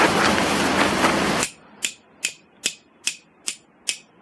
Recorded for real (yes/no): yes